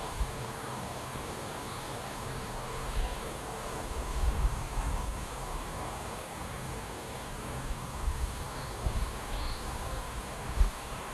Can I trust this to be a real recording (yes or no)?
no